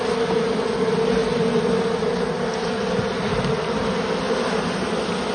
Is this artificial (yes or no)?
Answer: no